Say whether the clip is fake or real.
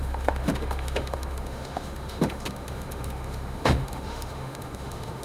fake